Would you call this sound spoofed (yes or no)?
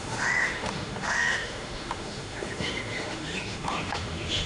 yes